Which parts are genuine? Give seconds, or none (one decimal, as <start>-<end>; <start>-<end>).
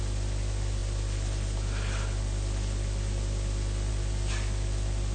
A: 0.0-5.1